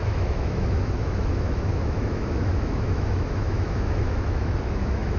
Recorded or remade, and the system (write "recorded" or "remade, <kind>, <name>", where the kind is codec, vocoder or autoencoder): remade, autoencoder, DAC-VAE